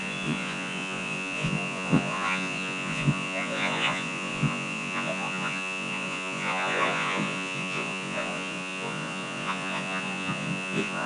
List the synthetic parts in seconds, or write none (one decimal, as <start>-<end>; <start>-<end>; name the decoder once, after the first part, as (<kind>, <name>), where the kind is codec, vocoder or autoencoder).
0.0-11.1 (vocoder, Vocos)